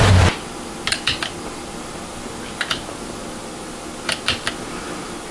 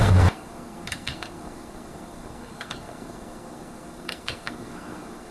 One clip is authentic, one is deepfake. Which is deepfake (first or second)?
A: second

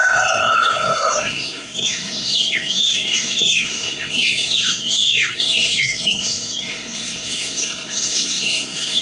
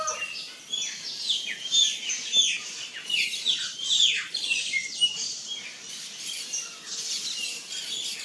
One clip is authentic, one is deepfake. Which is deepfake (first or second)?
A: first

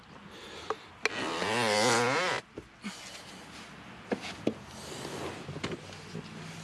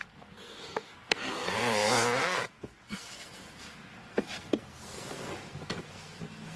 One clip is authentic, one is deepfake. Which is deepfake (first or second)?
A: second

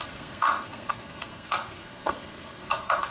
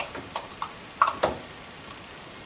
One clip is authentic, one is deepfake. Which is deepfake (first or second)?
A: first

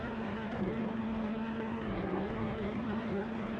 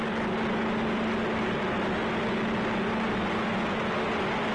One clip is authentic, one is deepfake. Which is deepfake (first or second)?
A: first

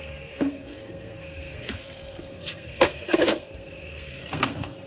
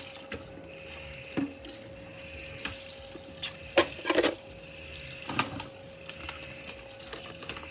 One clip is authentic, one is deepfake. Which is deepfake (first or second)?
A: first